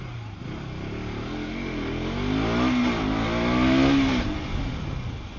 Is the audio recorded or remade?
recorded